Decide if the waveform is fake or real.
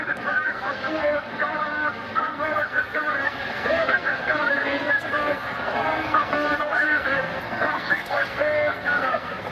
fake